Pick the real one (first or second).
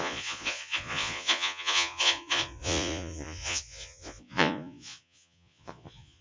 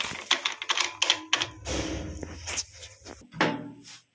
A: second